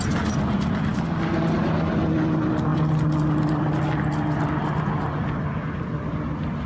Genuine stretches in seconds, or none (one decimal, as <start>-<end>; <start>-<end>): 0.0-6.7